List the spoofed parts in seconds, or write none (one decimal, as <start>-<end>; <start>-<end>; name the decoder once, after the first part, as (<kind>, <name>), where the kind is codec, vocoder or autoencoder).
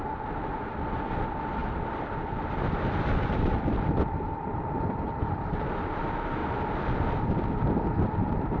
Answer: 1.6-6.0 (vocoder, BigVGAN v2)